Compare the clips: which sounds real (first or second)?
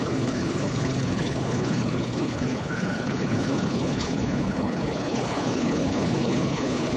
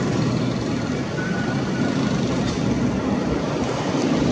second